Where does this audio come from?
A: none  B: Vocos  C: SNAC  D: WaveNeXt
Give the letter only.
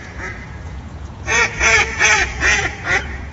B